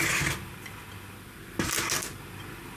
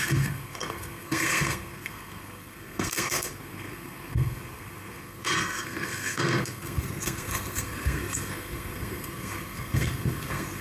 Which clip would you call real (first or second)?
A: first